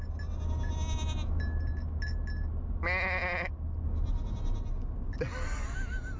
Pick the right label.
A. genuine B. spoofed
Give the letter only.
A